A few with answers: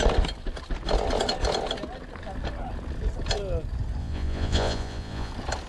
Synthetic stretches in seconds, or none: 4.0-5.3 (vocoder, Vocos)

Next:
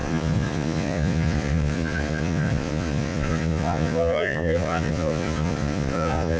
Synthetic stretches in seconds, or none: 0.0-6.4 (vocoder, Vocos)

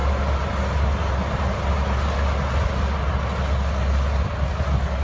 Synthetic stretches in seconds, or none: none

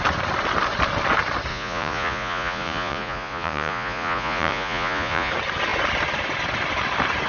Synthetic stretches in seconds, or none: 1.5-5.3 (vocoder, Vocos)

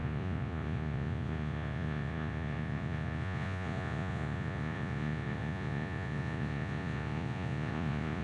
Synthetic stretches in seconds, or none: 0.0-8.2 (vocoder, Vocos)

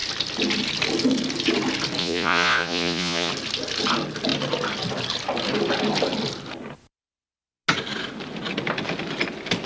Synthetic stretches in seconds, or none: 2.0-3.3 (vocoder, Vocos)